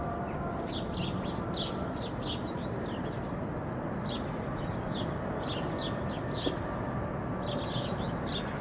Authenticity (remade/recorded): recorded